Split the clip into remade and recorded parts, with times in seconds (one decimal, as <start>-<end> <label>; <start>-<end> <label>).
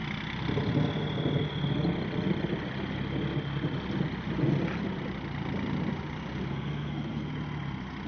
0.0-6.5 recorded; 6.5-7.3 remade; 7.3-8.1 recorded